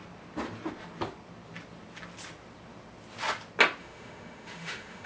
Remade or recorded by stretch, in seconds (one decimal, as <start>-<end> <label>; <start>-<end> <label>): 0.0-3.8 recorded; 3.8-5.1 remade